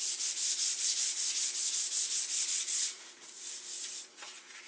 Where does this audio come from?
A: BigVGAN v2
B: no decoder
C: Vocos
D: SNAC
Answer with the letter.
C